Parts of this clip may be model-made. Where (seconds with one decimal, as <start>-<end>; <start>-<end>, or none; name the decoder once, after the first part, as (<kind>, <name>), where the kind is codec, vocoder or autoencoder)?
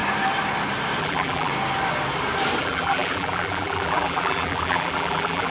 1.0-1.5 (vocoder, BigVGAN v2); 2.6-5.5